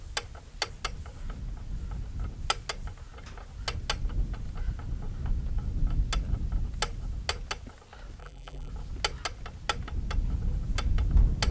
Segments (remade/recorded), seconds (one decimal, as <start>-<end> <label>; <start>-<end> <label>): 0.0-8.2 recorded; 8.2-8.7 remade; 8.7-11.5 recorded